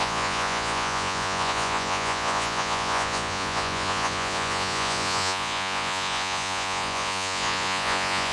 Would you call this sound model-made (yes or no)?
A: yes